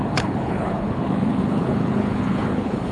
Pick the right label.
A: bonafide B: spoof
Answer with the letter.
B